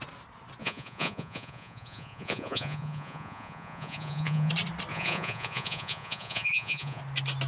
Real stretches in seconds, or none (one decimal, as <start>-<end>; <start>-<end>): 0.0-0.6; 4.5-4.9; 7.0-7.5